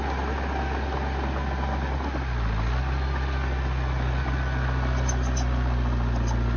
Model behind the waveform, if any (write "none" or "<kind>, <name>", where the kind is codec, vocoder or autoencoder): none